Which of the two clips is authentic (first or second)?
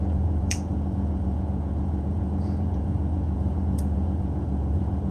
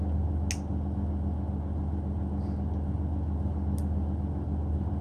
second